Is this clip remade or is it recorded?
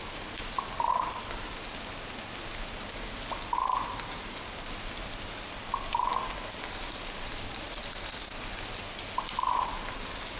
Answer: recorded